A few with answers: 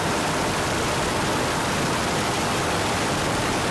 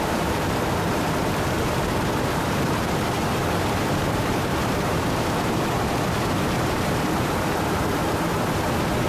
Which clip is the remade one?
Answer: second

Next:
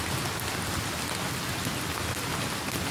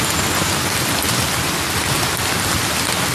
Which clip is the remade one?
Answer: second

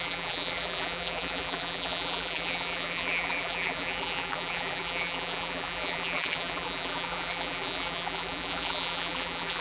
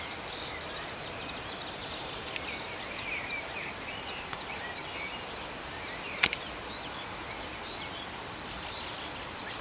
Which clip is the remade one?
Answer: first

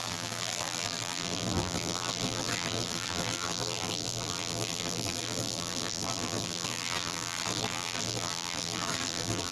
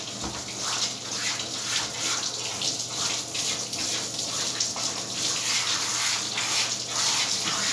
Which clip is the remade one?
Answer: first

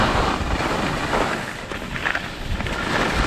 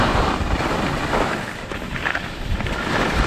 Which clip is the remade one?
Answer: second